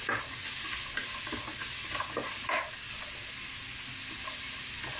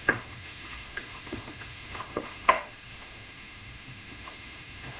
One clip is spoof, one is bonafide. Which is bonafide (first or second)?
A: first